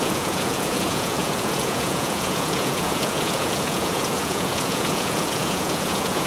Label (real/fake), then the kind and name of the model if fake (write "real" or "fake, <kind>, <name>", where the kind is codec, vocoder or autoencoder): fake, vocoder, Vocos